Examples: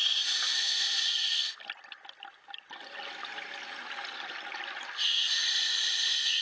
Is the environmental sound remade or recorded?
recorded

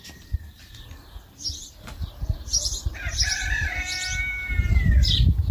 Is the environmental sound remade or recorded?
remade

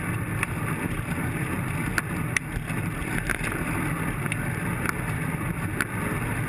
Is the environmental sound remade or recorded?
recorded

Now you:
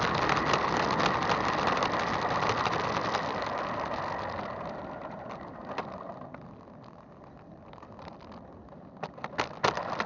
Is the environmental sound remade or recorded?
recorded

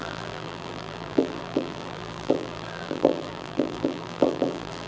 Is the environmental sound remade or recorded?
remade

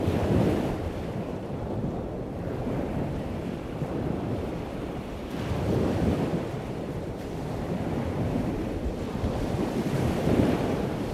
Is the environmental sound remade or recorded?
remade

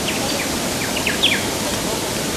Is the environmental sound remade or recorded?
remade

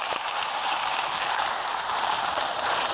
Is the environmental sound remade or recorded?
remade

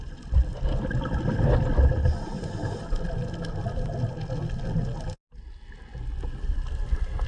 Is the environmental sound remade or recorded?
recorded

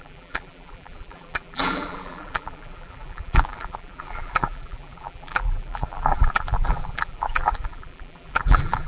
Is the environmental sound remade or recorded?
remade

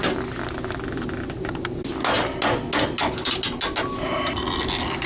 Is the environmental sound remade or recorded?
recorded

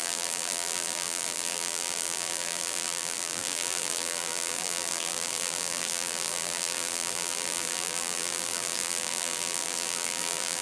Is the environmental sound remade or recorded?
remade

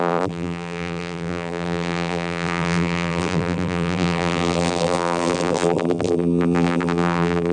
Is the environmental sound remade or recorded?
remade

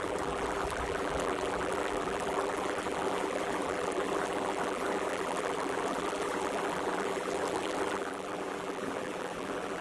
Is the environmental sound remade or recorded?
remade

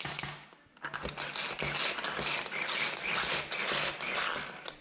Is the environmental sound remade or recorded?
recorded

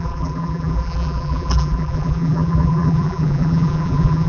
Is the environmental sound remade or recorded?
remade